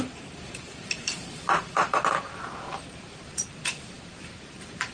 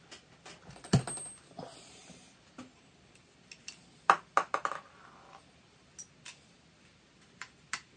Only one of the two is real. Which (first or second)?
second